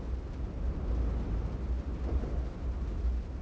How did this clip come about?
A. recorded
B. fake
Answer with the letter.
A